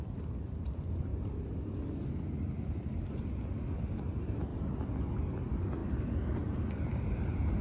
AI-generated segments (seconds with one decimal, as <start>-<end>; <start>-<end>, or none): none